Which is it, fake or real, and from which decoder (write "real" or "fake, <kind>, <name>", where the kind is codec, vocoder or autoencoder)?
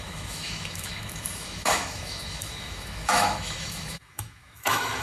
fake, autoencoder, DAC-VAE